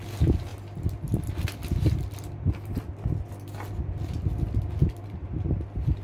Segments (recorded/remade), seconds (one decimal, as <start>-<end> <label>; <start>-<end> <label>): 0.0-4.8 recorded; 4.8-5.6 remade; 5.6-6.0 recorded